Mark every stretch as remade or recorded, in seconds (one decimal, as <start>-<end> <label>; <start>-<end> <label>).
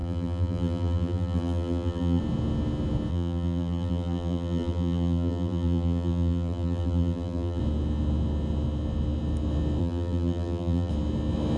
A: 0.0-2.2 remade; 2.2-3.1 recorded; 3.1-7.6 remade; 7.6-9.8 recorded; 9.8-10.9 remade; 10.9-11.6 recorded